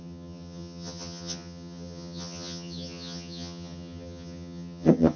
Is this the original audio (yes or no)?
no